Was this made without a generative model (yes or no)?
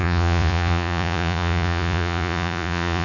no